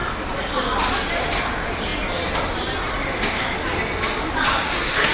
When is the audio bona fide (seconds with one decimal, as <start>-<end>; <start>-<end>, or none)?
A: 0.0-5.1